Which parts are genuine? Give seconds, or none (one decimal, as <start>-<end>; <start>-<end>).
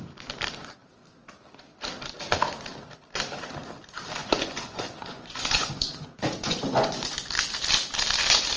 0.0-4.2; 7.3-8.6